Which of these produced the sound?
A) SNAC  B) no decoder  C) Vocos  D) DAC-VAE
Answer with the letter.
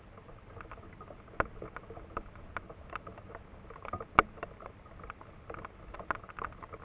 B